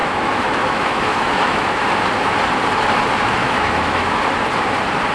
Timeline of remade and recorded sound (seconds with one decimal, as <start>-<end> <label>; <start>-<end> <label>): 0.0-1.9 remade; 1.9-3.4 recorded; 3.4-4.2 remade; 4.2-5.1 recorded

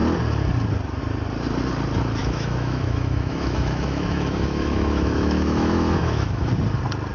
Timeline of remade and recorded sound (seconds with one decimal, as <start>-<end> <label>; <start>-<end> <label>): 0.0-2.2 recorded; 2.2-6.5 remade; 6.5-7.1 recorded